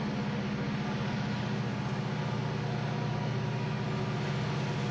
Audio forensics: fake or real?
real